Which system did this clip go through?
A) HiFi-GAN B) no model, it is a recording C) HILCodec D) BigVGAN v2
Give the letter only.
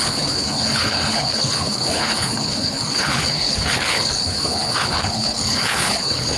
C